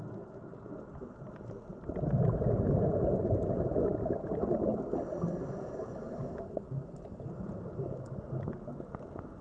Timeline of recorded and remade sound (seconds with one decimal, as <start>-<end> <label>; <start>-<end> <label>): 0.0-9.4 recorded